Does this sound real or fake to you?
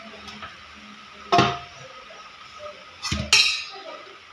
real